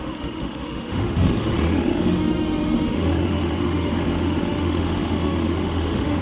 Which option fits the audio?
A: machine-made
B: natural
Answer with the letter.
A